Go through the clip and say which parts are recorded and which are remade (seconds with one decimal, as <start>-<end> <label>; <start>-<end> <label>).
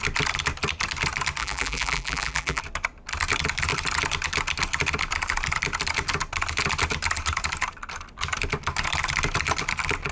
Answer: 0.0-1.4 recorded; 1.4-2.6 remade; 2.6-10.1 recorded